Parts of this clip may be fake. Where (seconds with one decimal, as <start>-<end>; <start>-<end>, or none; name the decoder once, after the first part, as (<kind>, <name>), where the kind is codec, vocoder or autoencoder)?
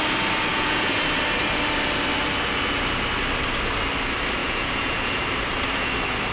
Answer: 0.5-1.0 (vocoder, Vocos); 4.4-5.2